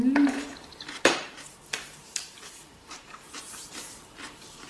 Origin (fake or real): fake